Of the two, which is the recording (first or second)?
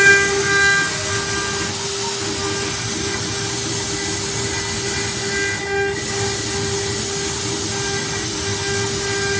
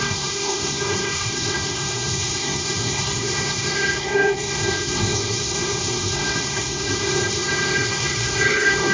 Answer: first